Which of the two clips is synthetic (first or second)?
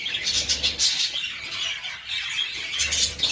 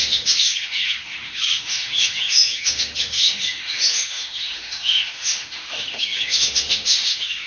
second